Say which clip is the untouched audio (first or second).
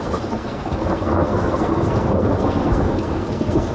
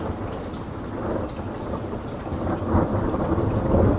second